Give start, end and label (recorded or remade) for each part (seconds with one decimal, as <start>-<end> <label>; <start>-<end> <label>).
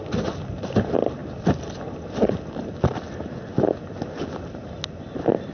0.0-5.5 recorded